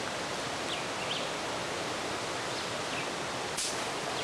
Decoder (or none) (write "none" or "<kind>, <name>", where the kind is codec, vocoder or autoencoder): none